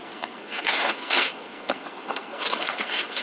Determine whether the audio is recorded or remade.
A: remade